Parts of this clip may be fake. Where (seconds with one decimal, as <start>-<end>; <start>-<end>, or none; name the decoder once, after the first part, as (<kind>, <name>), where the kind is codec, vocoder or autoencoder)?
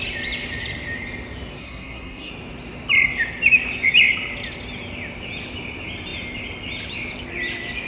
1.6-2.3 (codec, SNAC)